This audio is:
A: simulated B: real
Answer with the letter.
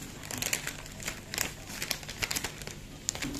B